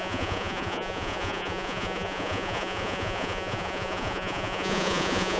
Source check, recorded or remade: remade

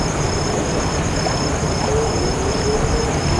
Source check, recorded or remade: recorded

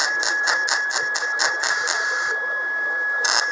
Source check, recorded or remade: recorded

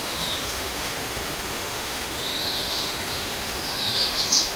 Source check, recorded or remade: remade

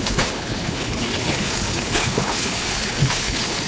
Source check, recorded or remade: remade